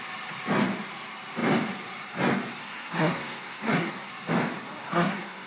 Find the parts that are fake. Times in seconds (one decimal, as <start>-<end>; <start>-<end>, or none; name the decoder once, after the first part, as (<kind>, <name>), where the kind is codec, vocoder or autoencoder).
2.6-4.1 (codec, SNAC); 4.8-5.5